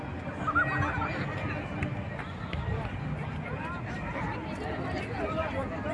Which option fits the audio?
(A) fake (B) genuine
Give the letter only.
B